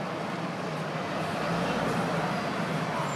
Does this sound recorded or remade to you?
recorded